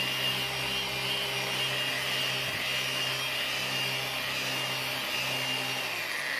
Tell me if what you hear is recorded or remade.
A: recorded